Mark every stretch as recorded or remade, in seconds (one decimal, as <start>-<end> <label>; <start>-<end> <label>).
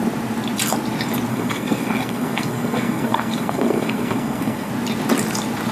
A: 0.0-1.3 recorded; 1.3-4.7 remade; 4.7-5.7 recorded